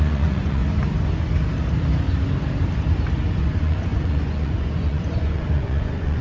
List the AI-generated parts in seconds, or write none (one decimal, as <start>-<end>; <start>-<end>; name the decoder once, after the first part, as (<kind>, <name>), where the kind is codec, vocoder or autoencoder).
0.0-0.6 (vocoder, Vocos); 3.4-6.2

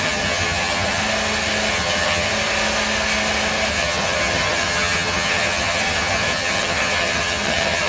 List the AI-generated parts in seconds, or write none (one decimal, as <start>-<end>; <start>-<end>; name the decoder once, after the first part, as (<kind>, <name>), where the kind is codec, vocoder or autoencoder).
0.0-1.0 (vocoder, HiFi-GAN); 1.7-2.3; 3.7-7.9

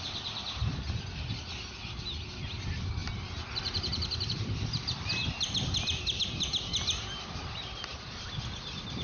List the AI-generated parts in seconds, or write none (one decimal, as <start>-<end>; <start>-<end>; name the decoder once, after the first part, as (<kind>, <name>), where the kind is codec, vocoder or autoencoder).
0.0-0.6 (vocoder, BigVGAN v2); 1.2-3.0; 4.3-9.0

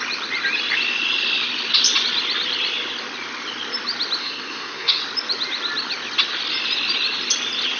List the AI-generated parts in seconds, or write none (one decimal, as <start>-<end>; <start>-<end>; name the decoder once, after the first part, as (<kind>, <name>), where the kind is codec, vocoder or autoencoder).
4.2-5.0 (codec, SNAC)

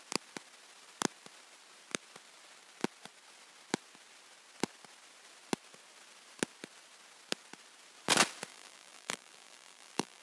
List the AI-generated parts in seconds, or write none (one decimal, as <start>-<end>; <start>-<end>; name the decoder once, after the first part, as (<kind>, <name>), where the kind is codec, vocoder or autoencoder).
8.5-10.2 (vocoder, BigVGAN v2)

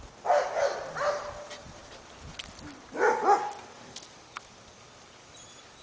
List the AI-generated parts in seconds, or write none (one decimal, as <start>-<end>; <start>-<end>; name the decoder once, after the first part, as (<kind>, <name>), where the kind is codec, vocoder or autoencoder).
none

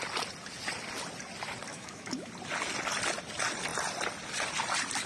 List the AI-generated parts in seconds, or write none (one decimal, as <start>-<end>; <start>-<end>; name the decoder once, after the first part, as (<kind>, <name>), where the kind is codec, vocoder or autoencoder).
1.7-2.3 (autoencoder, DAC-VAE)